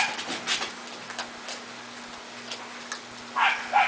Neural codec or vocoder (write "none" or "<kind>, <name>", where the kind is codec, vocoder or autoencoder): none